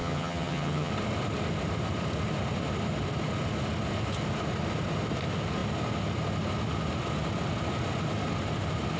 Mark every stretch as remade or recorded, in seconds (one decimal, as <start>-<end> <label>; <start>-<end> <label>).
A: 0.0-0.9 remade; 0.9-9.0 recorded